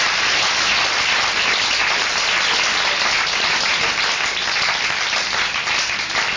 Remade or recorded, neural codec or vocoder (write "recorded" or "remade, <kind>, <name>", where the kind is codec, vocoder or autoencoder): recorded